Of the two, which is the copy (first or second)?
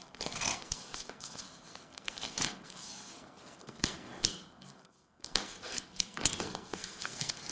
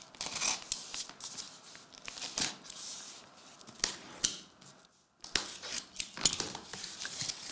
first